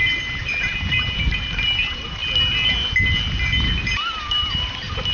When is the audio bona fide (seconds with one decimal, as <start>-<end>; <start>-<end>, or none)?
2.2-3.8